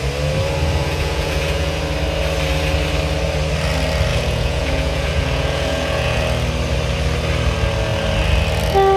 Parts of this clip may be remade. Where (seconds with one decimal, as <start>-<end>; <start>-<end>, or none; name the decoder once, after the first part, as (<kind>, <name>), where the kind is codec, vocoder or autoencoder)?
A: 0.8-1.8 (vocoder, Vocos); 4.1-6.2